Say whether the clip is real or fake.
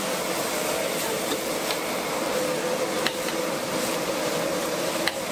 real